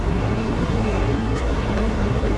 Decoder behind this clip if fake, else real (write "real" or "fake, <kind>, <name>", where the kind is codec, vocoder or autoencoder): fake, codec, SNAC